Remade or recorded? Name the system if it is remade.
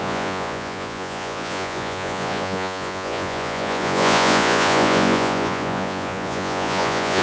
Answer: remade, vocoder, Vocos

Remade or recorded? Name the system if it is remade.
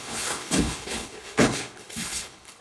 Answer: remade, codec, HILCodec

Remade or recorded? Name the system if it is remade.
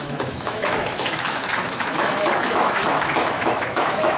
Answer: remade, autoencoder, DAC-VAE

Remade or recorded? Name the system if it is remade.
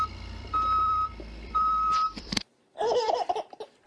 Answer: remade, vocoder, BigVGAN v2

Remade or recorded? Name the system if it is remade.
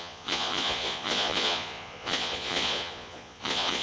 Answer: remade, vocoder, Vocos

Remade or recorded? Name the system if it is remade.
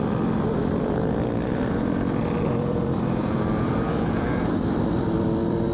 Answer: remade, vocoder, BigVGAN v2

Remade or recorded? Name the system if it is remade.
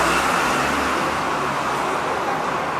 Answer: recorded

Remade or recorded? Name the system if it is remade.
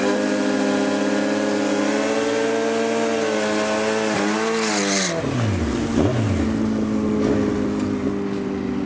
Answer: recorded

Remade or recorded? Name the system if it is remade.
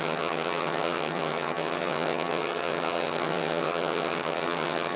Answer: remade, vocoder, HiFi-GAN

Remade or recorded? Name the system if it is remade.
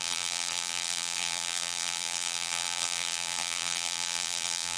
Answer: remade, vocoder, BigVGAN v2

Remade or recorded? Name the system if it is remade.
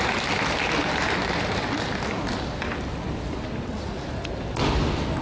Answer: recorded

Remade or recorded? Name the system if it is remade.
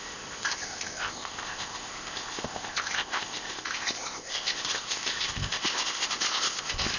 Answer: remade, codec, ZipCodec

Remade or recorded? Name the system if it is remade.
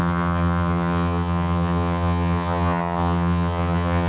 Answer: remade, vocoder, HiFi-GAN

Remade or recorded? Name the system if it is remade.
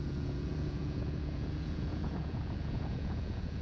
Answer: remade, vocoder, Vocos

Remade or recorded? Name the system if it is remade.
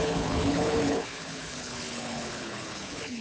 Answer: remade, codec, HILCodec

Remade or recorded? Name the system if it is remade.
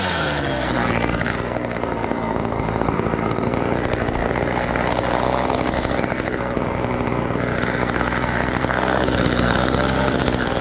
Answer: remade, codec, SNAC